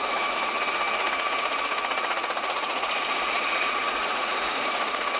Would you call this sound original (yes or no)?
no